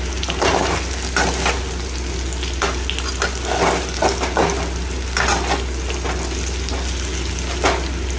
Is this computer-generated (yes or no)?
no